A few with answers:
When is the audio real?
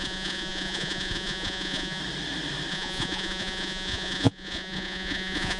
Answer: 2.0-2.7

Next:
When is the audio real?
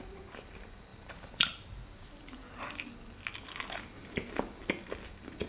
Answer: 0.0-0.9; 2.6-4.0; 4.6-5.5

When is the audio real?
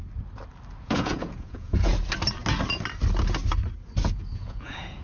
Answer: 0.0-0.8; 1.9-4.0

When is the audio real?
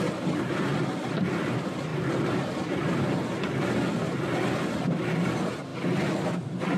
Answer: 0.0-6.8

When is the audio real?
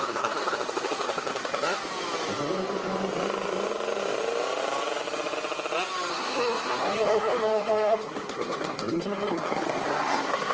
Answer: 1.8-6.1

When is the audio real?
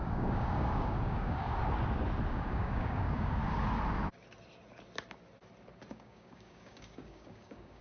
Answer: 1.6-2.3; 3.4-5.9